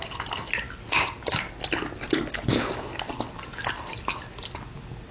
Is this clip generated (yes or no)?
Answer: no